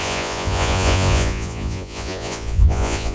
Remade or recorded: remade